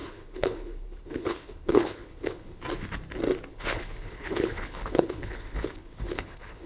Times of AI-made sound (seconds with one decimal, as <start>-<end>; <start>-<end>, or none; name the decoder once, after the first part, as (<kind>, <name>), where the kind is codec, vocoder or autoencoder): 0.0-2.6 (codec, HILCodec); 3.5-6.7